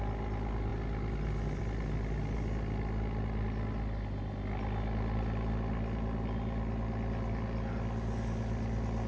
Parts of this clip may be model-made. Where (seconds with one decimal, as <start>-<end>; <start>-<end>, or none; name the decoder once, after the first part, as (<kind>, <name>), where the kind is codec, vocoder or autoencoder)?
none